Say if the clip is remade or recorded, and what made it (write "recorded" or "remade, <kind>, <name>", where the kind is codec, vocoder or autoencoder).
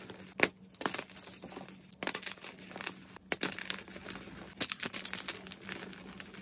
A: recorded